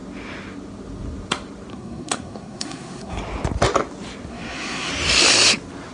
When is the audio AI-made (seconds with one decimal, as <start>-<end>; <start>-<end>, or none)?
1.7-3.2; 4.3-4.9